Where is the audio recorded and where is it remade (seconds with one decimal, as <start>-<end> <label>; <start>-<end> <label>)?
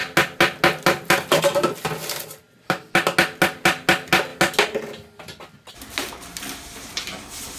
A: 0.0-7.6 recorded